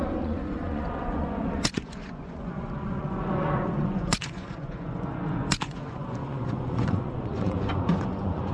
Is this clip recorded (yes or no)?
no